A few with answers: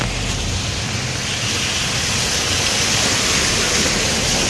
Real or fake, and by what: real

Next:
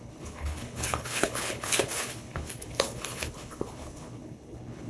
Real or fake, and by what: fake, codec, HILCodec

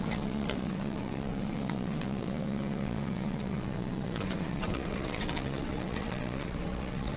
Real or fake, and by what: fake, vocoder, WaveNeXt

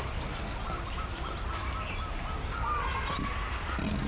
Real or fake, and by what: real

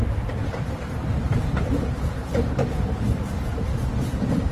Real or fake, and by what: fake, vocoder, BigVGAN v2